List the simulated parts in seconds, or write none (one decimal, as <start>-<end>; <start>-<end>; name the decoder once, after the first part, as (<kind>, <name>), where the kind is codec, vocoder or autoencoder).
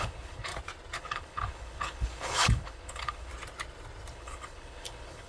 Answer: 0.0-0.5 (codec, HILCodec); 1.0-3.3; 4.1-5.3